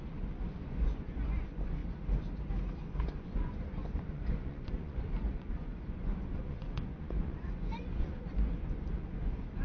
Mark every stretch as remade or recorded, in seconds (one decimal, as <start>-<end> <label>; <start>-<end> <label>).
0.0-1.8 remade; 1.8-2.8 recorded; 2.8-9.6 remade